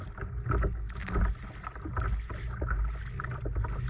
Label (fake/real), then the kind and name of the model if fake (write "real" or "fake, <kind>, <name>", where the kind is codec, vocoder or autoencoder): real